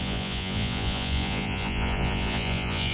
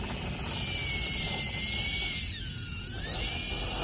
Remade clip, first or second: first